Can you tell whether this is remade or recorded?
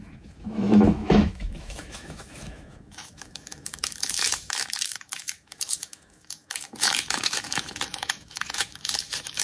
remade